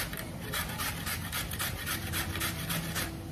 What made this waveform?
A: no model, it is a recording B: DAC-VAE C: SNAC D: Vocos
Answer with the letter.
A